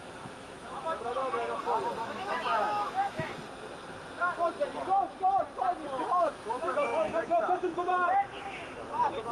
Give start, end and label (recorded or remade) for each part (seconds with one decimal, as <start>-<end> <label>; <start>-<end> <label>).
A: 0.0-1.2 remade; 1.2-2.0 recorded; 2.0-3.3 remade; 3.3-6.3 recorded; 6.3-9.3 remade

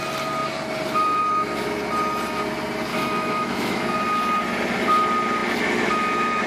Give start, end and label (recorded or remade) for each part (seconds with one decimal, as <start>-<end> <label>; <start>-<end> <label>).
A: 0.0-2.9 recorded; 2.9-3.8 remade; 3.8-6.5 recorded